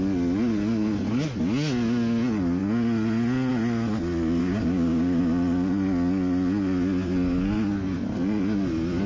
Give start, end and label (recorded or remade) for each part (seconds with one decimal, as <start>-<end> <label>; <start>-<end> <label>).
0.0-4.4 recorded; 4.4-5.2 remade; 5.2-9.1 recorded